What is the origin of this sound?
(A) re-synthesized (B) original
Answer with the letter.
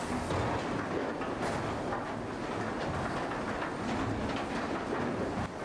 B